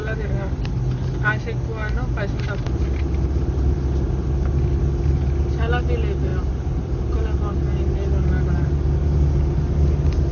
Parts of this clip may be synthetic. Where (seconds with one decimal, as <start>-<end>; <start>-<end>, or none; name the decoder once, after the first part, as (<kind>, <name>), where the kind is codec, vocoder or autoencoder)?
none